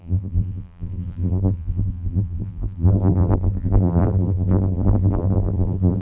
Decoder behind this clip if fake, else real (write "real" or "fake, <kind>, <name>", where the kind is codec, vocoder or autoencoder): fake, vocoder, BigVGAN v2